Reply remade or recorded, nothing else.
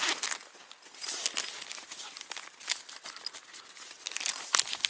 recorded